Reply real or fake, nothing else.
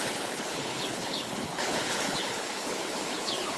fake